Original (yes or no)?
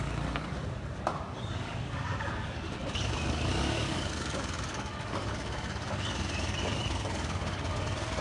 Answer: no